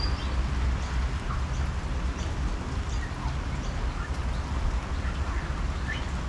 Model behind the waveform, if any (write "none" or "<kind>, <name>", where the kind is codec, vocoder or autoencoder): none